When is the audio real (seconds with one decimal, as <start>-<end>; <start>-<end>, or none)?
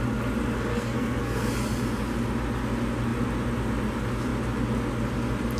0.0-0.7; 1.5-5.6